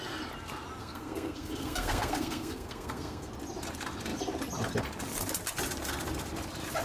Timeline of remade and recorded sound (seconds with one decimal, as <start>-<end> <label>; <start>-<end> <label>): 0.0-0.8 recorded; 0.8-3.3 remade; 3.3-6.8 recorded